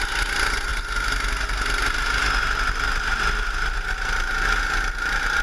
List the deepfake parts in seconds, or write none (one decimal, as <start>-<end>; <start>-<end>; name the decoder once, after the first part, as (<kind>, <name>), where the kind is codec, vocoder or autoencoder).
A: none